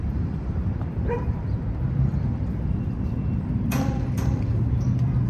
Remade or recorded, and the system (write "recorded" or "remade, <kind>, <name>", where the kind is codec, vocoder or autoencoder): remade, vocoder, BigVGAN v2